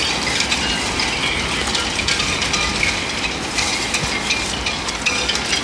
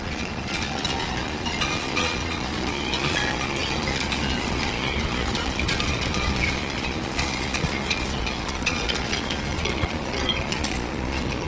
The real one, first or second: first